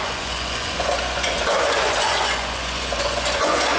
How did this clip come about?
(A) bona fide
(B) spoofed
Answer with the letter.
B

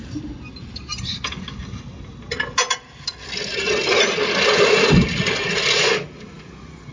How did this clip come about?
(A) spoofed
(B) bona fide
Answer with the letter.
B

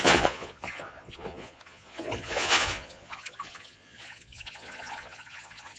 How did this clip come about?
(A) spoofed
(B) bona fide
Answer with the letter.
A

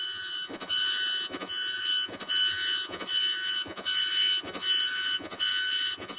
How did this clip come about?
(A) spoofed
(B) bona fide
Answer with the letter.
A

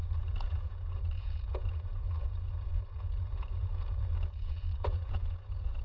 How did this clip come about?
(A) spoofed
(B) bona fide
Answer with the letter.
A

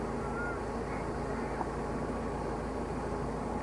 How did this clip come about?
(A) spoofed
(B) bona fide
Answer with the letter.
B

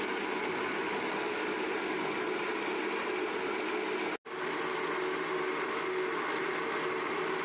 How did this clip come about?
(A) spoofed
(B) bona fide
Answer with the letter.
B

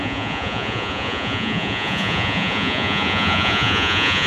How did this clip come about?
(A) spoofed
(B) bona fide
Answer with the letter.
A